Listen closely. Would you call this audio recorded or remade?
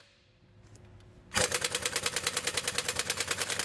recorded